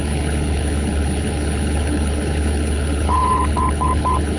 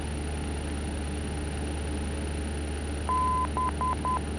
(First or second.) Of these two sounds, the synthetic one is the first